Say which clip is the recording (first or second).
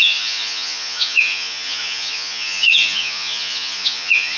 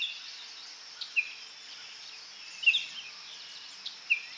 second